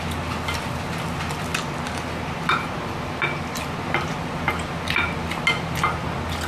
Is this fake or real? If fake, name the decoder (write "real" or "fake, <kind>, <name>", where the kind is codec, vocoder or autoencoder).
real